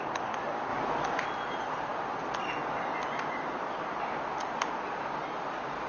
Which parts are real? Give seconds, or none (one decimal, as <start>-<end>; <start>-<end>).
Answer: 0.0-5.9